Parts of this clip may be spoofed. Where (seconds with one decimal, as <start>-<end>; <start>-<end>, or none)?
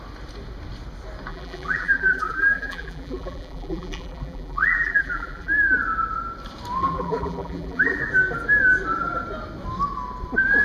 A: 1.3-5.5; 6.8-8.0